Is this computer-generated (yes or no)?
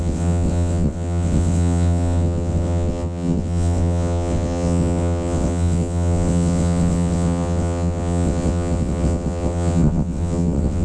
yes